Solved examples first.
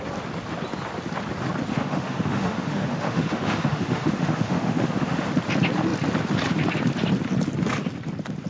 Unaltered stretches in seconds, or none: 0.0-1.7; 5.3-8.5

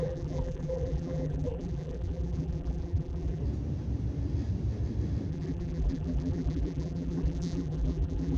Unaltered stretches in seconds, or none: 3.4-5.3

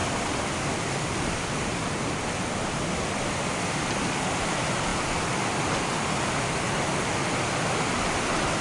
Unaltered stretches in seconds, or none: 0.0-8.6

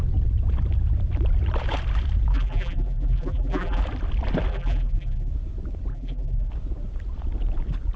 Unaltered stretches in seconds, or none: 0.0-2.3; 3.8-4.5; 5.3-5.9; 6.5-8.0